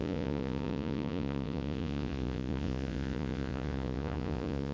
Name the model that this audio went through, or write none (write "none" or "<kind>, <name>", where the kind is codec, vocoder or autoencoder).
vocoder, Vocos